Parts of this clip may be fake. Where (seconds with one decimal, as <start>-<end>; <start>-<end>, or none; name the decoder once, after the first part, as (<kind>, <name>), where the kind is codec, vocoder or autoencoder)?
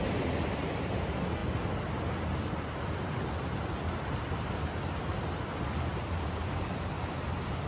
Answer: none